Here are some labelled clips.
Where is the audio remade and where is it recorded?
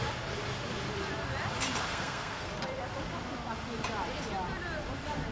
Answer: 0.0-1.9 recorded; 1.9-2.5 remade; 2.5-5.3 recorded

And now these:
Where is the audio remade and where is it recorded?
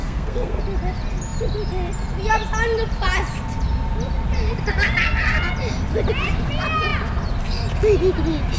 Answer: 0.0-0.6 remade; 0.6-8.6 recorded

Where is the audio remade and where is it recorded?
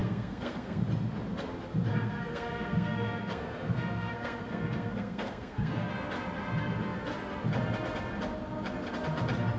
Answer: 0.0-0.8 remade; 0.8-1.9 recorded; 1.9-5.9 remade; 5.9-9.6 recorded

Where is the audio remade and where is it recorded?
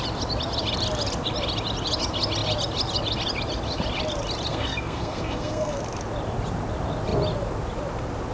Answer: 0.0-4.5 recorded; 4.5-5.8 remade; 5.8-8.3 recorded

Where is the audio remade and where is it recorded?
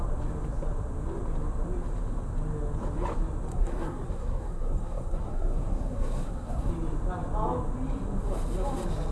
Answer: 0.0-3.5 recorded; 3.5-6.7 remade; 6.7-9.1 recorded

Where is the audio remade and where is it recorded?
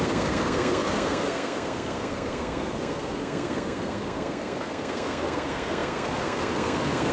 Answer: 0.0-7.1 remade